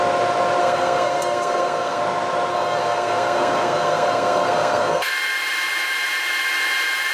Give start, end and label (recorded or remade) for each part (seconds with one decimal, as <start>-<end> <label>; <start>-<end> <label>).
0.0-0.6 recorded; 0.6-2.0 remade; 2.0-2.5 recorded; 2.5-5.1 remade; 5.1-7.1 recorded